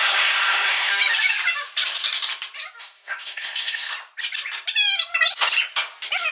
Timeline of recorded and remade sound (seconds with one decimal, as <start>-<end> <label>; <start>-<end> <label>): 0.0-0.9 remade; 0.9-2.8 recorded; 2.8-3.9 remade; 3.9-6.3 recorded